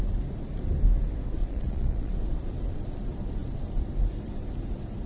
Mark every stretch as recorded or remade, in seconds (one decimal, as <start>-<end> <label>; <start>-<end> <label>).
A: 0.0-1.4 recorded; 1.4-2.1 remade; 2.1-5.1 recorded